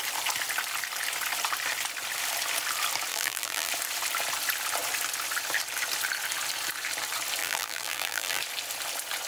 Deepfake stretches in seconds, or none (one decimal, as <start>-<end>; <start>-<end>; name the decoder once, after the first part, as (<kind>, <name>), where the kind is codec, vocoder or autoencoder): 3.1-3.7 (vocoder, BigVGAN v2); 7.4-8.4